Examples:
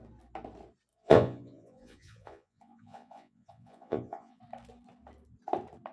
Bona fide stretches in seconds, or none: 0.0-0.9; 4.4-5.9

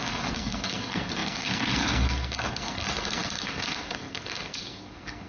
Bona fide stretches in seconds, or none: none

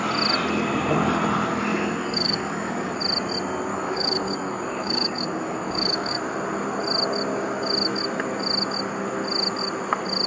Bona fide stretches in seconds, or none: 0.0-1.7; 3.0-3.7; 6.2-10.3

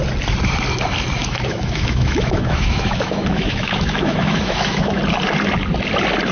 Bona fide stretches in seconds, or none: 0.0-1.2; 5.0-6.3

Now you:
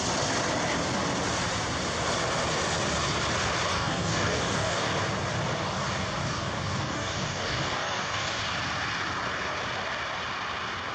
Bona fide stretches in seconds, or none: 0.0-3.7; 4.9-6.2; 8.4-10.9